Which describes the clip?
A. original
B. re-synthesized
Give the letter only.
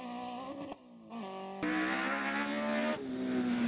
A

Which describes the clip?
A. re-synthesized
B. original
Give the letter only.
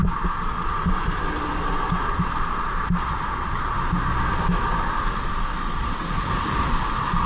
B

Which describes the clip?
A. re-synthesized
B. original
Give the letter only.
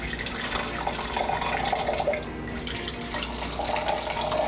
B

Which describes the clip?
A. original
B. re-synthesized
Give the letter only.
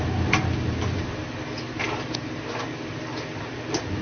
A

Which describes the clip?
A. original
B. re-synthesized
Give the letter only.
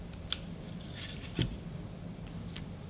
A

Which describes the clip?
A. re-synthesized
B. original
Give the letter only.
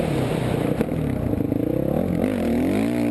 B